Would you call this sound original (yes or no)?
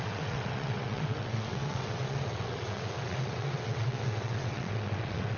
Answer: no